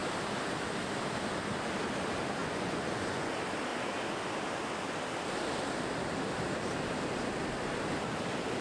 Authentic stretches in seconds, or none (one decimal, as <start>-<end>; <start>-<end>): 0.0-2.4; 3.3-8.6